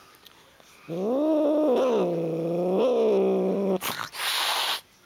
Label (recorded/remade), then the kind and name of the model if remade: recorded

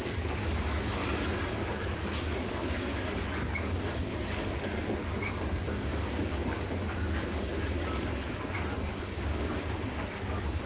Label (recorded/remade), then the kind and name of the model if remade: remade, codec, DAC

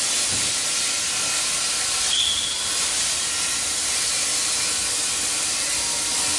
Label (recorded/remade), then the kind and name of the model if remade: recorded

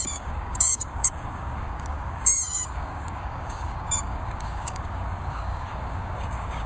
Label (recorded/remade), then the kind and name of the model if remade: remade, codec, DAC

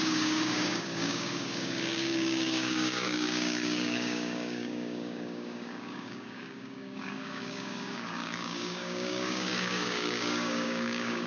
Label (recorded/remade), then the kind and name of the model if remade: remade, codec, DAC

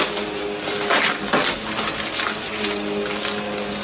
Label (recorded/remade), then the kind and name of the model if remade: recorded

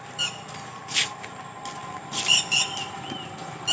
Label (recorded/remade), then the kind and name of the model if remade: recorded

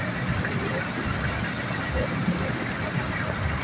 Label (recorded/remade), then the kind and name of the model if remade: recorded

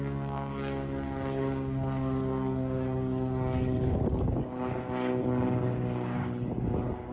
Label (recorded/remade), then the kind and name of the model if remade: remade, codec, DAC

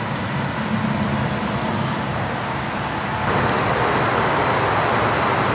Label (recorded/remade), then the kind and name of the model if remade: recorded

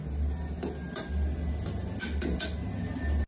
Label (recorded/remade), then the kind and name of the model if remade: recorded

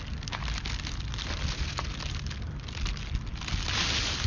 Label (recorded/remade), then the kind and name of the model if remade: recorded